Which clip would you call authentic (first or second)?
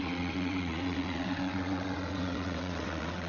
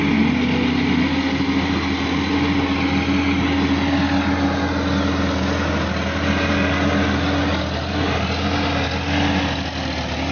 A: second